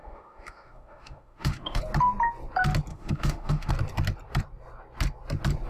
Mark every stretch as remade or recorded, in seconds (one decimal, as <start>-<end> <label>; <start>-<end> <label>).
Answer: 0.0-1.8 remade; 1.8-2.9 recorded; 2.9-3.7 remade; 3.7-5.7 recorded